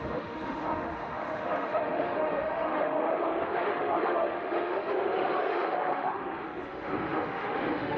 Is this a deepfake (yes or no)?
yes